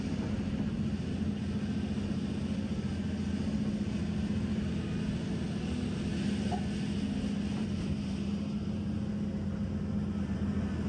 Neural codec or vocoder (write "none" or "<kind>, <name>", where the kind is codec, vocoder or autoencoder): none